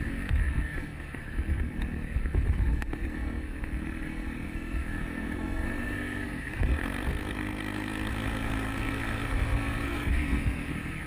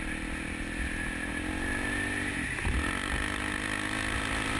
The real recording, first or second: second